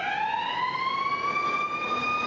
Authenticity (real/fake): real